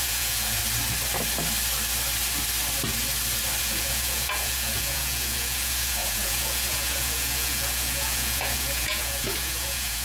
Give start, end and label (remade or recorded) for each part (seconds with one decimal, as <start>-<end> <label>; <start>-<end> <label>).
0.0-0.6 remade; 0.6-3.6 recorded; 3.6-10.0 remade